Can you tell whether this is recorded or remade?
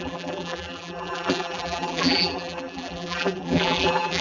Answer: remade